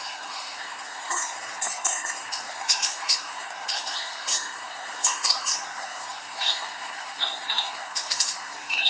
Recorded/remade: remade